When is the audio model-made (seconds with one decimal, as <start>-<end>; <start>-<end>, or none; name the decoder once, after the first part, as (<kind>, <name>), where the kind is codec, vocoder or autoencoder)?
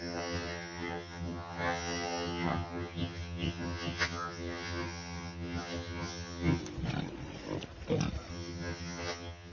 0.0-6.6 (vocoder, HiFi-GAN); 8.3-9.5